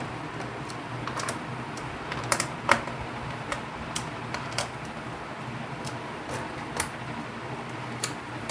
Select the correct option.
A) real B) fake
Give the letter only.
B